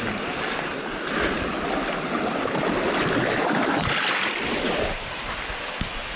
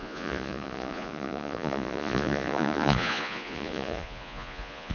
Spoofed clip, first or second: second